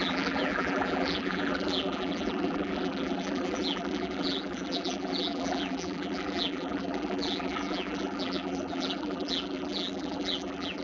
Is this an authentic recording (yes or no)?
no